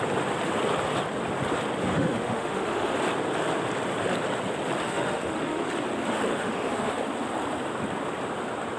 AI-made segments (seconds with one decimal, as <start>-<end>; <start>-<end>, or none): 1.9-3.0; 4.8-5.6; 6.3-7.0